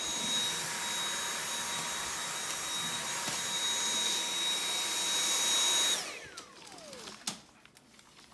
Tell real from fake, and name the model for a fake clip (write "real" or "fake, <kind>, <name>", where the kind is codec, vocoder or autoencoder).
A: real